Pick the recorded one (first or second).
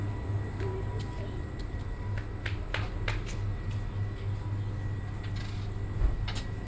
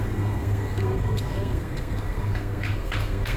first